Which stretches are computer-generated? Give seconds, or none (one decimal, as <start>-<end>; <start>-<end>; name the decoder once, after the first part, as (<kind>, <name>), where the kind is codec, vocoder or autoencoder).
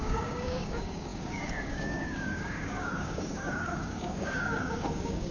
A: 0.0-5.3 (codec, DAC)